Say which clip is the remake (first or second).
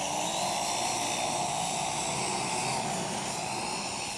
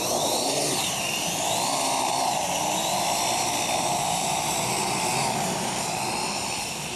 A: second